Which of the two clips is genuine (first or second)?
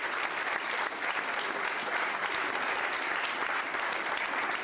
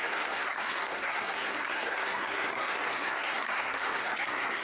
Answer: first